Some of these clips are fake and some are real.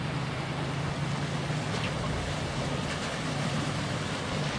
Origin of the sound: real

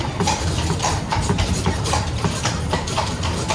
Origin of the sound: real